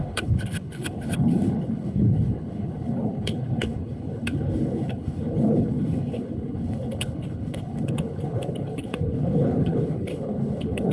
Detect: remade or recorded remade